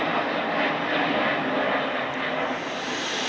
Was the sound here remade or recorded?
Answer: recorded